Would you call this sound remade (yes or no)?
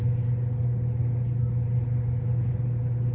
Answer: no